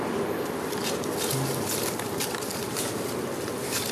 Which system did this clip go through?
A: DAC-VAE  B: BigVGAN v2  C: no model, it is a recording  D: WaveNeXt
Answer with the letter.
C